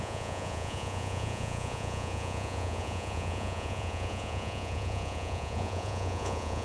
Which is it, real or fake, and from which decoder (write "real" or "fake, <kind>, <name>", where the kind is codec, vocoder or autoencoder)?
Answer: fake, vocoder, Vocos